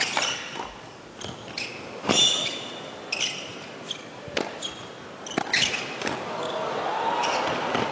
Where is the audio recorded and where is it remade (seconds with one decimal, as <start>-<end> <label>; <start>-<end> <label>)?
0.0-7.9 recorded